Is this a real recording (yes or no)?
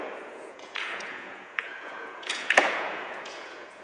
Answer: no